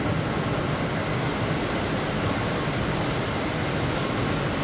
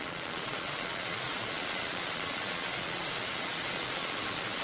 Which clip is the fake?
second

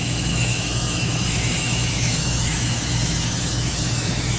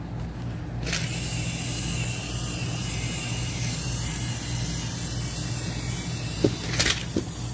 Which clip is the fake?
first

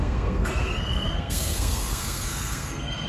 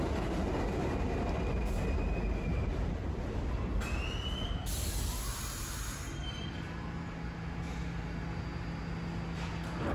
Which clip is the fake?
first